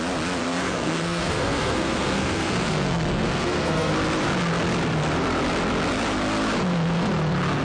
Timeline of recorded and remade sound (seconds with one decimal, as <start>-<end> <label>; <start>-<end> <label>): 0.0-0.4 recorded; 0.4-3.9 remade; 3.9-7.6 recorded